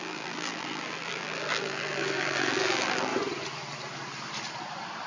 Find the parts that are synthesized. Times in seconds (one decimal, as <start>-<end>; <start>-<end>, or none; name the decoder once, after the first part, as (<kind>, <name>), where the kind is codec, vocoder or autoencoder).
0.0-3.1 (vocoder, BigVGAN v2)